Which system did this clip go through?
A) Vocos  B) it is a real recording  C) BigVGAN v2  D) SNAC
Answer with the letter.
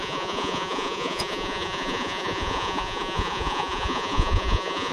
A